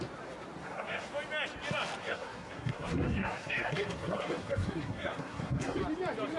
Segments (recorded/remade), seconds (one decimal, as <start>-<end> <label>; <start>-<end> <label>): 0.0-0.6 recorded; 0.6-1.1 remade; 1.1-2.0 recorded; 2.0-5.8 remade; 5.8-6.4 recorded